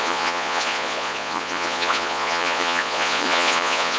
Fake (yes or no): yes